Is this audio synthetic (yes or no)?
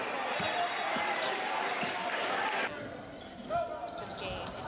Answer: no